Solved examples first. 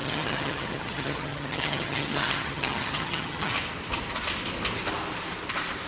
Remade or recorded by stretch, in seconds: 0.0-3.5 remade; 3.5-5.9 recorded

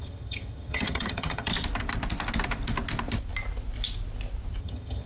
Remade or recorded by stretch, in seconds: 0.0-1.5 remade; 1.5-4.6 recorded; 4.6-5.1 remade

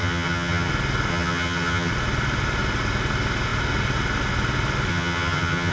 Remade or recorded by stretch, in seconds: 0.0-0.7 remade; 0.7-1.1 recorded; 1.1-1.9 remade; 1.9-4.9 recorded; 4.9-5.7 remade

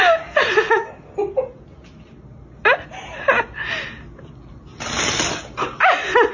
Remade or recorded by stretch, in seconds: 0.0-6.3 recorded

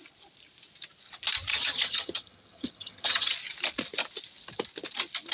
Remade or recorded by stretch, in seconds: 0.0-1.5 recorded; 1.5-3.3 remade; 3.3-5.3 recorded

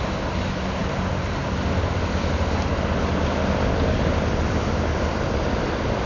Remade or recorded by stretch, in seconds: 0.0-6.1 recorded